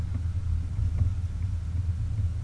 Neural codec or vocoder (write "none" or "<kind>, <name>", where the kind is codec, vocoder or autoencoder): none